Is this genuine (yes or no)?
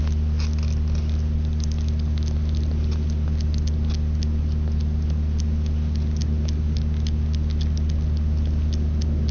yes